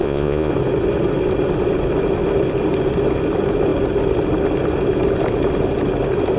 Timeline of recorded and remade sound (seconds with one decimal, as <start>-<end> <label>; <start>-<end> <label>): 0.0-0.5 remade; 0.5-6.4 recorded

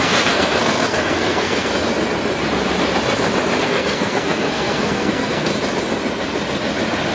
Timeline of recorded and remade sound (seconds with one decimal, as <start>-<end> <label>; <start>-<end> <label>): 0.0-1.7 remade; 1.7-3.6 recorded; 3.6-5.5 remade; 5.5-7.1 recorded

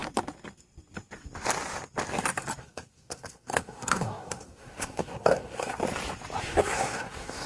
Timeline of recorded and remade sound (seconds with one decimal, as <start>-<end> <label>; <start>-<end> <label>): 0.0-2.6 recorded; 2.6-5.8 remade; 5.8-6.4 recorded; 6.4-7.5 remade

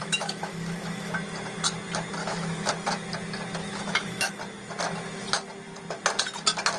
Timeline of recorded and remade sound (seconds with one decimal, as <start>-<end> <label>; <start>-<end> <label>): 0.0-1.1 remade; 1.1-2.2 recorded; 2.2-2.7 remade; 2.7-3.6 recorded; 3.6-4.3 remade; 4.3-6.8 recorded